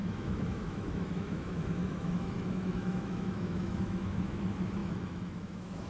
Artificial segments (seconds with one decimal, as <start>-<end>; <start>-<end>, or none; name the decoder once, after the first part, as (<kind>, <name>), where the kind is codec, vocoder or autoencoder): 0.0-5.9 (autoencoder, DAC-VAE)